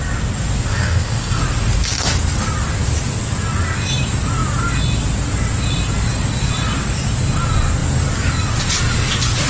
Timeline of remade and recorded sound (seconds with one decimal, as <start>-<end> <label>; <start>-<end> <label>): 0.0-0.7 recorded; 0.7-1.4 remade; 1.4-9.5 recorded